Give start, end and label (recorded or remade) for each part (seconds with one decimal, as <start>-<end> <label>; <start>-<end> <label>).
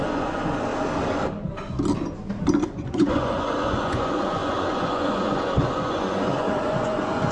0.0-0.7 remade; 0.7-2.7 recorded; 2.7-7.3 remade